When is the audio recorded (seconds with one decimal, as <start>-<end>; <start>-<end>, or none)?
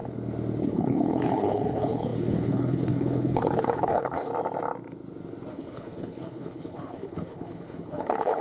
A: 0.0-0.6; 4.3-5.5